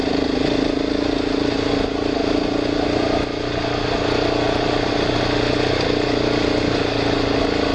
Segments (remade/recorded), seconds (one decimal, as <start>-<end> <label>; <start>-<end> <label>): 0.0-7.7 recorded